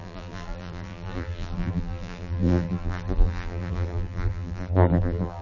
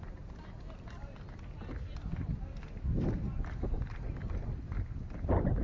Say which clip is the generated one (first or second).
first